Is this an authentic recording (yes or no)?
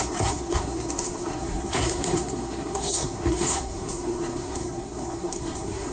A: no